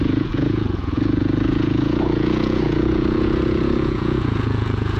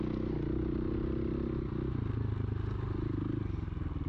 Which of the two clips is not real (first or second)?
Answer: first